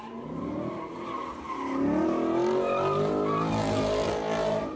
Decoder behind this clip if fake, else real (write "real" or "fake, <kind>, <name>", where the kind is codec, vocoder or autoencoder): real